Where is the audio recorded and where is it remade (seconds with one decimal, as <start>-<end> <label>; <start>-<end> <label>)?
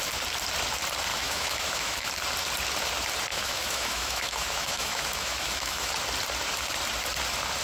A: 0.0-1.1 recorded; 1.1-2.1 remade; 2.1-3.3 recorded; 3.3-5.9 remade; 5.9-7.6 recorded